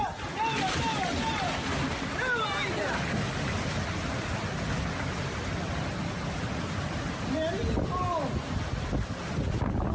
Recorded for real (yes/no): yes